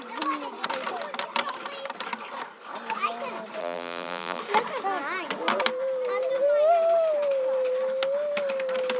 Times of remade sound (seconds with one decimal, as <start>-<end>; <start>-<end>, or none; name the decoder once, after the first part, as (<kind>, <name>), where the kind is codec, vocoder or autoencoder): 3.6-4.4 (vocoder, BigVGAN v2)